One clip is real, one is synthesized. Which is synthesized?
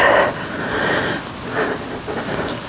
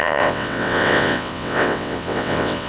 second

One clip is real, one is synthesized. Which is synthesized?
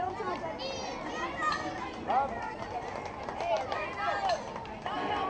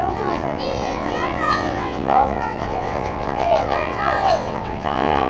second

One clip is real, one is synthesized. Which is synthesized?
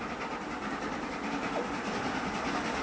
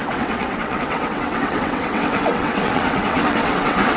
second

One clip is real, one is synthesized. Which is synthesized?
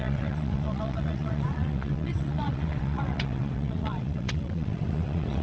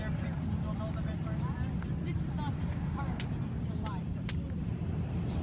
first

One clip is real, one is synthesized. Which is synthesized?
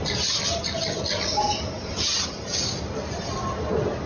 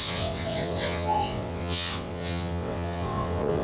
second